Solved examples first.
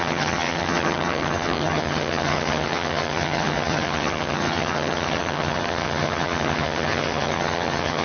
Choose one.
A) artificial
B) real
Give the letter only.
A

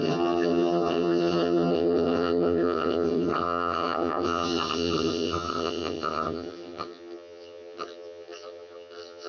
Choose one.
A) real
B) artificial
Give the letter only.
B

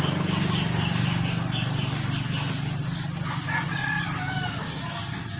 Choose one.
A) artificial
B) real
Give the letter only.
B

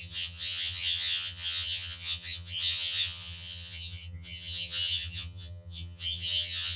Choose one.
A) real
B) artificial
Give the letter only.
B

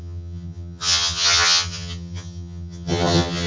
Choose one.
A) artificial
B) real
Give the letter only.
A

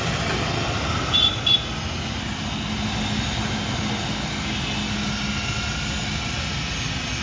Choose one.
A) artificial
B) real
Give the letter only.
B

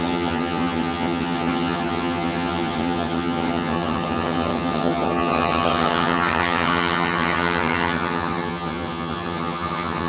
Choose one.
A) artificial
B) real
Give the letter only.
A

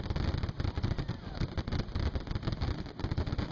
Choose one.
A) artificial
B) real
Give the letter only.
B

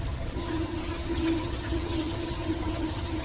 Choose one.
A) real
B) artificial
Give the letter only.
B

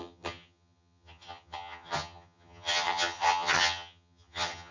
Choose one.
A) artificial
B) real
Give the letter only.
A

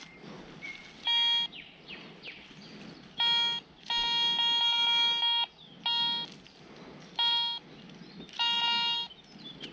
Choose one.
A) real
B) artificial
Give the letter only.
A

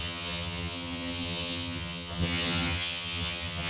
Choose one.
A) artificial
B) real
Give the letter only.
A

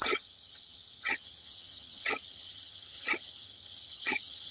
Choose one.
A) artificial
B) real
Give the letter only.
A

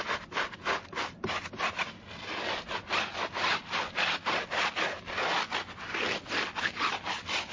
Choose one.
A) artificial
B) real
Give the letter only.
B